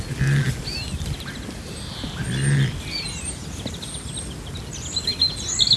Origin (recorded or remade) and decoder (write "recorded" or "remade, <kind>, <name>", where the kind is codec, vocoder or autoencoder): recorded